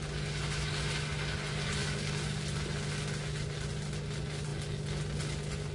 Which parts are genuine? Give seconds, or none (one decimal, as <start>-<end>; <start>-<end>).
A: 0.0-1.8; 2.4-5.7

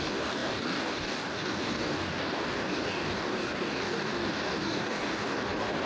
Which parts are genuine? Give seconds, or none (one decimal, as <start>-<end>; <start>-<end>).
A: none

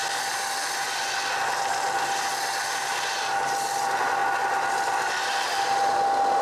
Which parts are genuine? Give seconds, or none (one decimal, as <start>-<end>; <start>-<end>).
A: 0.0-6.4

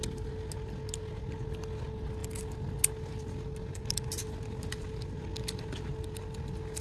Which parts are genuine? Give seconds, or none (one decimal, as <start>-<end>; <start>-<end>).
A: 0.0-6.8

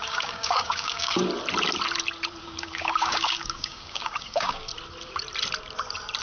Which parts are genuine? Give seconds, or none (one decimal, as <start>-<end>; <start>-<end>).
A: 1.2-2.4; 4.7-6.2

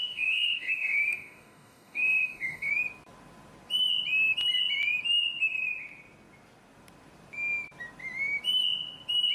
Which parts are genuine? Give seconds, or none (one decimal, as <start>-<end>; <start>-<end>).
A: 2.7-9.3

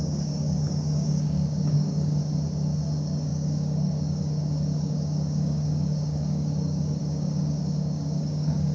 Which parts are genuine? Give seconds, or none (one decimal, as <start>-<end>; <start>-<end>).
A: 2.2-2.8

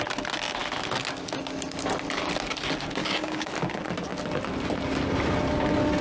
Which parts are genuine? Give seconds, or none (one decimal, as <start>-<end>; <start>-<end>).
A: 0.0-3.0; 3.5-6.0